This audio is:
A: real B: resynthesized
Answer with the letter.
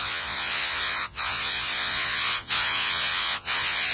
B